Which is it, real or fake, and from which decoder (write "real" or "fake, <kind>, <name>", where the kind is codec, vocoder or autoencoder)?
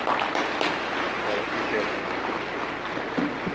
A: real